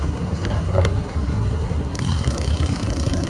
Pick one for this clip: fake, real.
fake